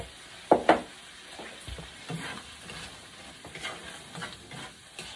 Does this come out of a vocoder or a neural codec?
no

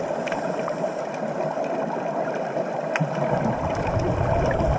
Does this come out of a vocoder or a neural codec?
yes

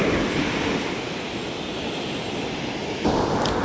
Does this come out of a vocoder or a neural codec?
no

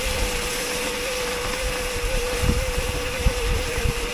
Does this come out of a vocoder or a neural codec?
no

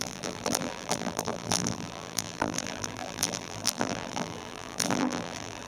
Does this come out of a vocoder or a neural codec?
yes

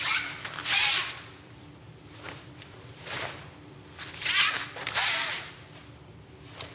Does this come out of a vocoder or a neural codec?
yes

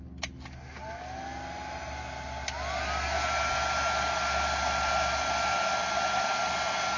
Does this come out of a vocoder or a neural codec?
no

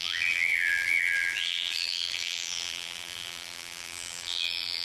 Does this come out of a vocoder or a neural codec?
yes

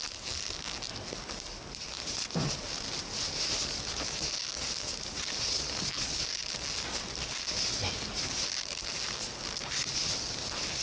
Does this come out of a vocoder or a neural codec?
no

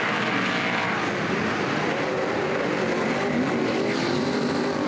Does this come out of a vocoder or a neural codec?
yes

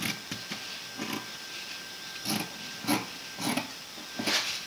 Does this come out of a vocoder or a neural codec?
no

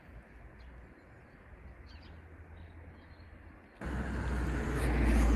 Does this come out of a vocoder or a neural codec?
no